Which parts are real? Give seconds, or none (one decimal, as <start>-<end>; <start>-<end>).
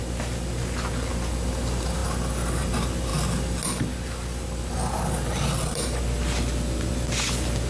0.0-7.7